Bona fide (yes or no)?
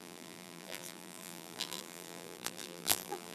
no